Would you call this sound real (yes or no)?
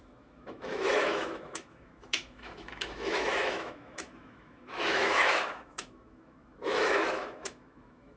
no